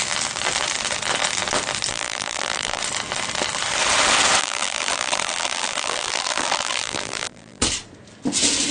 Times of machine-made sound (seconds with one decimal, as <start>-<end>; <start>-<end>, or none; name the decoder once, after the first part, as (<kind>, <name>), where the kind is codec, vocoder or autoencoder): 1.9-2.8 (vocoder, BigVGAN v2); 4.4-7.6